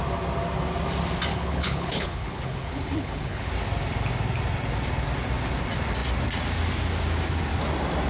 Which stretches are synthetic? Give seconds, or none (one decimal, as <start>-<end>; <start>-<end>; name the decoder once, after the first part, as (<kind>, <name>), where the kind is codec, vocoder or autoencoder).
1.3-3.5 (codec, HILCodec)